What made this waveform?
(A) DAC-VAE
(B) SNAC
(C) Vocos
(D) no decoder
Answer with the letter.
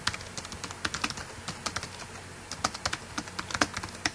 D